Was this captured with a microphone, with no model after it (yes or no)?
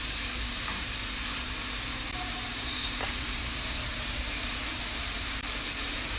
no